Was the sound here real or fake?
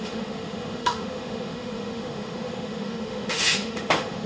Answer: fake